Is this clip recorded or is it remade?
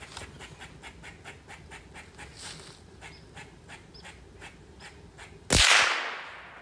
recorded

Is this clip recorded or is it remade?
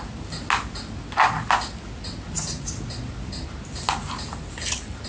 recorded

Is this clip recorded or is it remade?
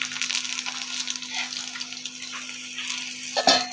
recorded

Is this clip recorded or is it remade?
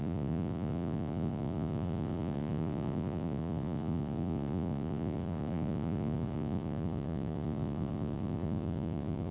remade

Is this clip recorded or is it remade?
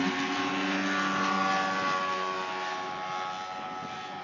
recorded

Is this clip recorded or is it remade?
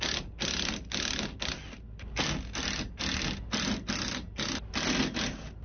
recorded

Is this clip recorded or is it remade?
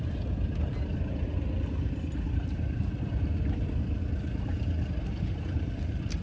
recorded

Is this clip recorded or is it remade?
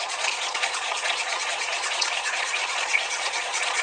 remade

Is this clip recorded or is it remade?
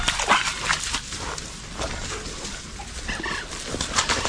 recorded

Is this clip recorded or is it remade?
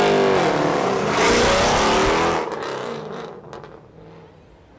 recorded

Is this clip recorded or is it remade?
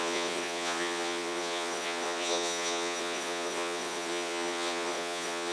remade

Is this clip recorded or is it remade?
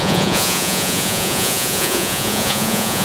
remade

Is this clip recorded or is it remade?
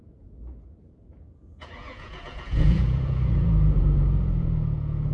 remade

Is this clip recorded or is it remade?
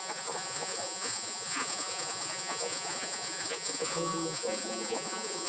remade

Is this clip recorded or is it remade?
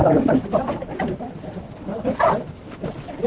recorded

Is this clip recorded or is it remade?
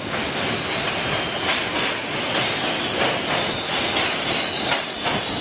recorded